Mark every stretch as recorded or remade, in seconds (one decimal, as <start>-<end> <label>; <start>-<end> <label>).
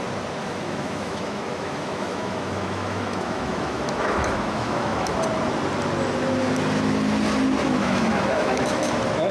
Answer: 0.0-0.4 recorded; 0.4-5.1 remade; 5.1-7.6 recorded; 7.6-8.9 remade; 8.9-9.3 recorded